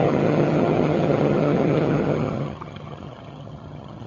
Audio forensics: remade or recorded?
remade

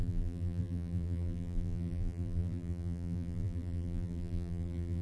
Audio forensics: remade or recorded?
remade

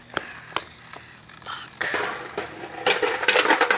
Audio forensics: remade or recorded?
recorded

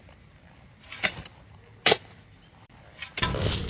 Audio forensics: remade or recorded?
remade